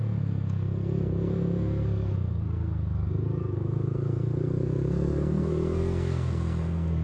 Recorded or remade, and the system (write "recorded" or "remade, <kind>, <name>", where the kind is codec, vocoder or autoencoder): remade, codec, SNAC